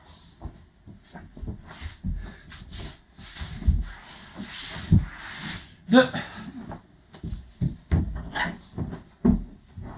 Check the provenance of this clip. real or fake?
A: real